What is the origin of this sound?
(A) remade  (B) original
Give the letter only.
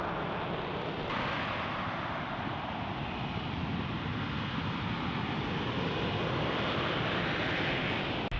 B